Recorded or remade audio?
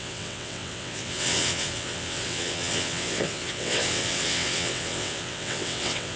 remade